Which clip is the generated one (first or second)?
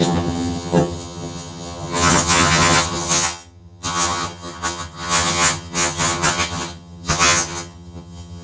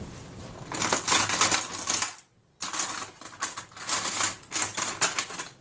first